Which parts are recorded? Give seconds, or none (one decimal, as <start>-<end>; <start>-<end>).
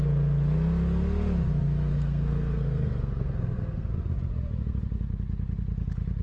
0.0-1.9; 3.9-6.2